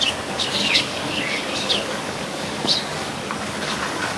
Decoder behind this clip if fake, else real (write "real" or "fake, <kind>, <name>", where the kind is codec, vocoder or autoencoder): fake, codec, DAC